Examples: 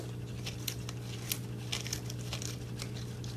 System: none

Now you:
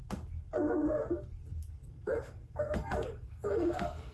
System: codec, SNAC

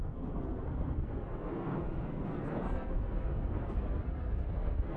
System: codec, SNAC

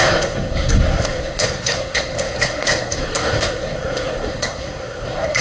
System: codec, SNAC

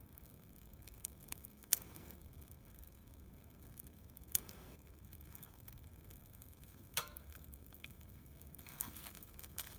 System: codec, SNAC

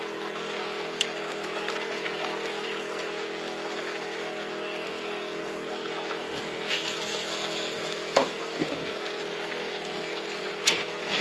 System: codec, SNAC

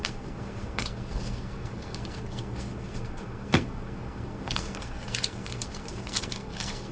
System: codec, SNAC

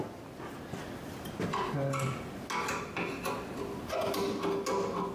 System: none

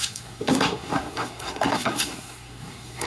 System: codec, SNAC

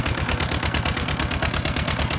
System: codec, SNAC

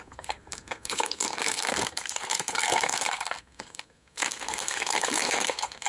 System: codec, SNAC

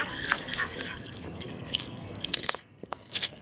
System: codec, SNAC